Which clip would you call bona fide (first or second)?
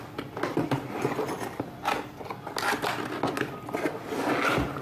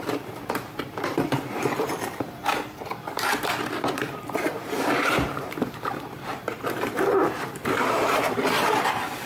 first